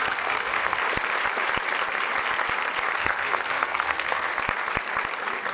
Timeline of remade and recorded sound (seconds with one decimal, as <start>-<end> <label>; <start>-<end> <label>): 0.0-0.8 remade; 0.8-3.0 recorded; 3.0-4.3 remade; 4.3-5.5 recorded

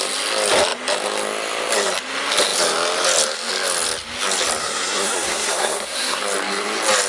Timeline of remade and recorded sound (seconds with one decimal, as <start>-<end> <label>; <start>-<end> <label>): 0.0-4.6 recorded; 4.6-6.2 remade; 6.2-7.1 recorded

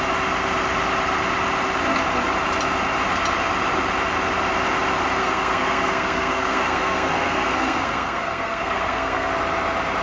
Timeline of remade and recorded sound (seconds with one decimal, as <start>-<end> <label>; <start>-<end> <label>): 0.0-5.2 recorded; 5.2-9.3 remade; 9.3-10.0 recorded

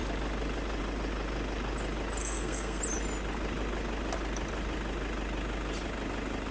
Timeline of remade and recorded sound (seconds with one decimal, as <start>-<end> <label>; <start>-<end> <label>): 0.0-2.2 recorded; 2.2-2.8 remade; 2.8-6.5 recorded